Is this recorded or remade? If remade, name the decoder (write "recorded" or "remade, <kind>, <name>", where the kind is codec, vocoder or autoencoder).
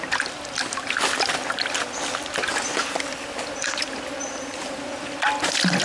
recorded